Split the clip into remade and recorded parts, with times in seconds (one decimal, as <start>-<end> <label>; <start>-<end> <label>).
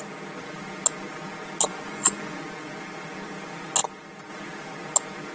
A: 0.0-1.7 recorded; 1.7-2.4 remade; 2.4-5.3 recorded